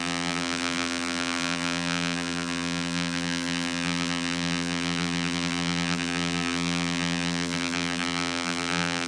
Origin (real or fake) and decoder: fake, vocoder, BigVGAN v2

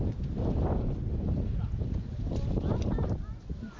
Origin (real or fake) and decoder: real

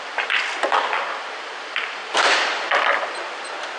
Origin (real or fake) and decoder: fake, vocoder, BigVGAN v2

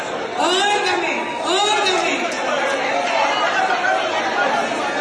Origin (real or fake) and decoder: real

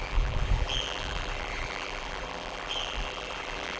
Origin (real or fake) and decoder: fake, vocoder, BigVGAN v2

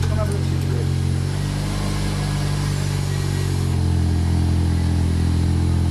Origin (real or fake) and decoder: real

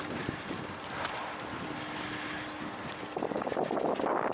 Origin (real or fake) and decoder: real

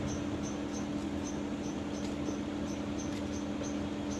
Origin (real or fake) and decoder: real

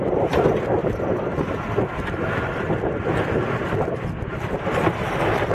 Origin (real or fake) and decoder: fake, vocoder, BigVGAN v2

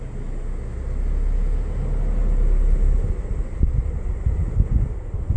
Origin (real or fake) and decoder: real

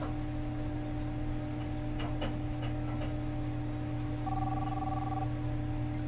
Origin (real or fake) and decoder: real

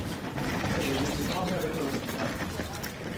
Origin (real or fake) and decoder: fake, vocoder, BigVGAN v2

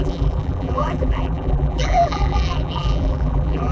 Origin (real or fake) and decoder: fake, vocoder, BigVGAN v2